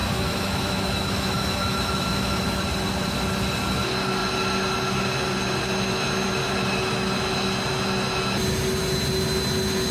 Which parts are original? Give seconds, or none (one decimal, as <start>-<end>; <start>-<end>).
2.6-9.9

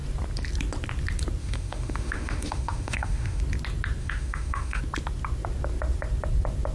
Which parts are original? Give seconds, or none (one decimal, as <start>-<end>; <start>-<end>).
0.0-1.4; 3.4-4.0; 4.8-6.7